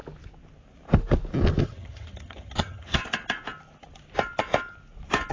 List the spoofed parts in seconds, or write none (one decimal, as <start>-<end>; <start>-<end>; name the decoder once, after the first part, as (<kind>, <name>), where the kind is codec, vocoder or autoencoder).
1.6-3.0 (vocoder, HiFi-GAN)